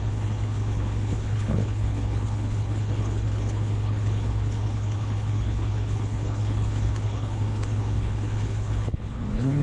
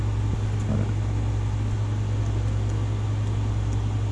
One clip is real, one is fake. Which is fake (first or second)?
first